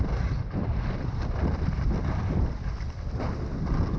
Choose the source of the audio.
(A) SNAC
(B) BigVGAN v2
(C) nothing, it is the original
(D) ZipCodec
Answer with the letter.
C